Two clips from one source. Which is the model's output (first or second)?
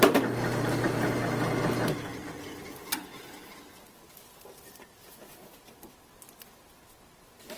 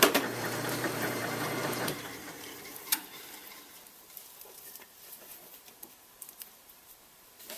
second